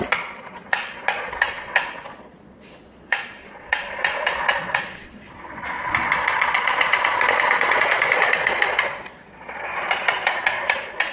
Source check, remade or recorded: remade